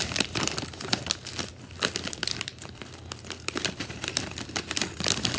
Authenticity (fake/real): fake